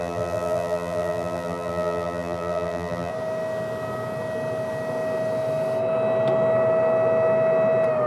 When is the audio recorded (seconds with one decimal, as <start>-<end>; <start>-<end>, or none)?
3.1-8.1

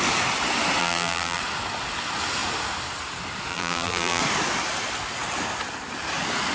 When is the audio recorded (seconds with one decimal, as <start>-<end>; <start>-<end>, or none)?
0.0-0.8; 1.4-3.5; 4.2-6.5

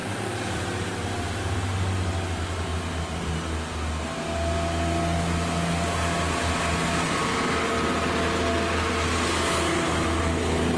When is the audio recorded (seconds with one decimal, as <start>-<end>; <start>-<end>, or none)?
0.9-10.8

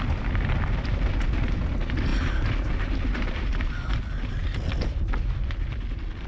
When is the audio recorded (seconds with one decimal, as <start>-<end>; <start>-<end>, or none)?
0.0-6.3

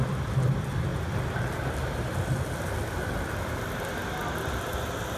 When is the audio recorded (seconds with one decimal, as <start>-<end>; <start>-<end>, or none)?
0.0-5.2

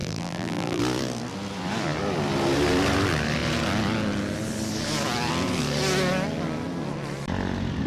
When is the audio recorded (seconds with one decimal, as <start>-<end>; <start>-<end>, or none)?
0.8-7.9

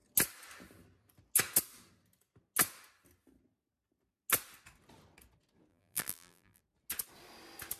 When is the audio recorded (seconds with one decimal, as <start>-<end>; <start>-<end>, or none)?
0.0-5.7; 6.6-7.8